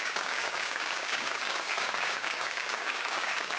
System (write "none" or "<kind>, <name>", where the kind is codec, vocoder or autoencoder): codec, DAC